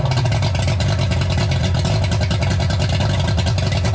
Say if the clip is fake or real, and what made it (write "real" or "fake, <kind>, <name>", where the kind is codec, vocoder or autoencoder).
real